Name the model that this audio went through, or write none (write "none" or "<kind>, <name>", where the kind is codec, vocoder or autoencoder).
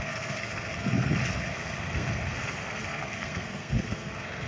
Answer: codec, SNAC